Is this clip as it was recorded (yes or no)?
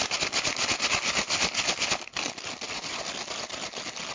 yes